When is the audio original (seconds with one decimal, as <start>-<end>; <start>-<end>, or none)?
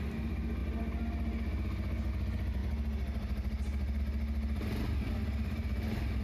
0.0-6.2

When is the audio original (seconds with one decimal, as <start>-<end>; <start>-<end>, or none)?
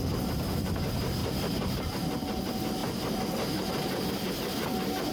0.0-1.2; 1.8-5.1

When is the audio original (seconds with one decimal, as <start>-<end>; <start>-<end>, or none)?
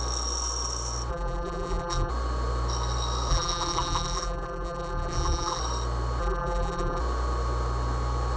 0.0-1.1; 2.1-3.3; 5.6-6.2; 7.0-8.4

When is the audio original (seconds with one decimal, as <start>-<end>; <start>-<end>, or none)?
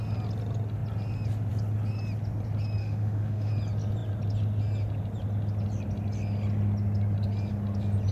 0.0-2.8; 3.5-8.1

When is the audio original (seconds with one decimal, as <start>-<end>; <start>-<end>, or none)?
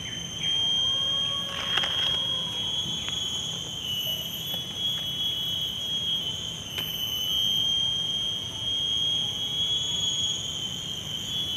0.0-4.1; 5.8-11.6